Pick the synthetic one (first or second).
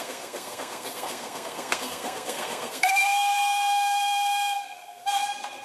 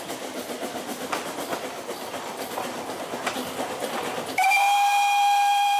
first